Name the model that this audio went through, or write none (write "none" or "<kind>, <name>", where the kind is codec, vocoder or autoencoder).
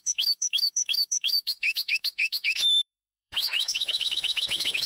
autoencoder, DAC-VAE